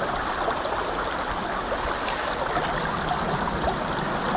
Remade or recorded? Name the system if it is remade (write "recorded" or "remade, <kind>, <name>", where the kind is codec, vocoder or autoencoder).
recorded